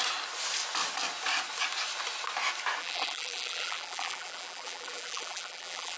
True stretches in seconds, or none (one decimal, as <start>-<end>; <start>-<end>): 0.0-2.8